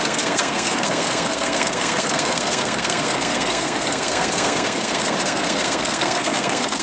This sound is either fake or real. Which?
fake